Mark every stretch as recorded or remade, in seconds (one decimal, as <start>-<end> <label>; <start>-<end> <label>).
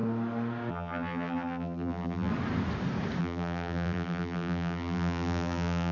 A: 0.0-0.7 recorded; 0.7-2.3 remade; 2.3-3.2 recorded; 3.2-5.9 remade